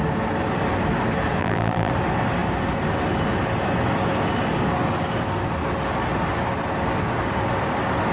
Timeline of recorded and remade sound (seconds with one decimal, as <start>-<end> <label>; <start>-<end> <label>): 0.0-1.4 recorded; 1.4-1.9 remade; 1.9-8.1 recorded